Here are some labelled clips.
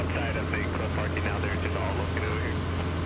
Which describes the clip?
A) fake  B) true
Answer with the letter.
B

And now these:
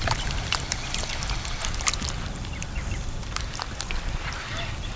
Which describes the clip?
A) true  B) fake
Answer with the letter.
A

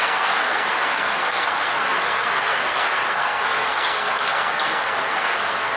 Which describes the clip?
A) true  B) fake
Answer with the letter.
B